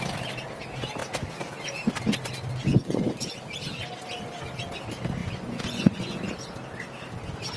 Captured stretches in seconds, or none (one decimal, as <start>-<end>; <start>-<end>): 0.0-2.7; 3.3-5.2; 6.3-7.6